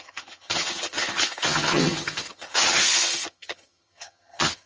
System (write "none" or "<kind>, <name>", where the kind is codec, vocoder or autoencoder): vocoder, HiFi-GAN